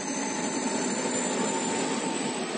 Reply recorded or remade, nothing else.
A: recorded